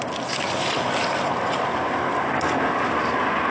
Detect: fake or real real